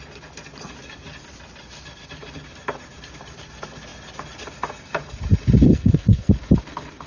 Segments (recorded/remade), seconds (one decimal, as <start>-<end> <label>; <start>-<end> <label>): 0.0-5.7 recorded; 5.7-6.3 remade; 6.3-7.1 recorded